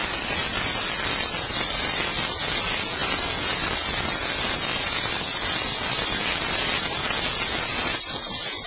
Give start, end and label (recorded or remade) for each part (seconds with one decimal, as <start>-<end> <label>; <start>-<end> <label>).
0.0-8.7 recorded